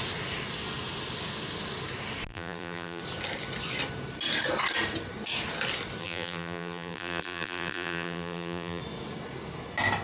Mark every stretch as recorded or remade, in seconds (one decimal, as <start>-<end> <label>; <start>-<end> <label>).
0.0-2.3 recorded; 2.3-3.0 remade; 3.0-6.0 recorded; 6.0-8.8 remade; 8.8-10.0 recorded